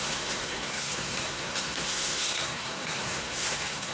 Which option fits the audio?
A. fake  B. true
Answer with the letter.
A